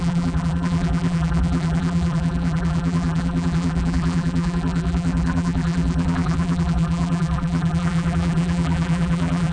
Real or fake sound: fake